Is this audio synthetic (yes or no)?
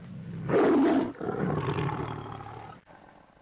no